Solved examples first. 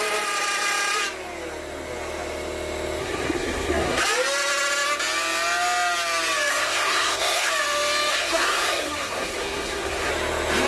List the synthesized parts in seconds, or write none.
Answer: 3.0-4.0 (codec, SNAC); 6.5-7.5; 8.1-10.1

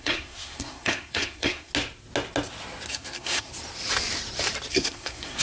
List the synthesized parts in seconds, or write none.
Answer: 0.0-1.7 (codec, SNAC); 2.9-3.5; 4.7-5.4